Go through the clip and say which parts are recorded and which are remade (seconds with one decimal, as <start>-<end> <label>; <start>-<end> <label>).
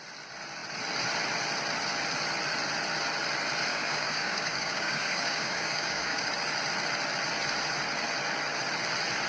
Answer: 0.0-3.7 recorded; 3.7-6.3 remade; 6.3-9.3 recorded